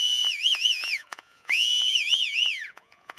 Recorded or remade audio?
remade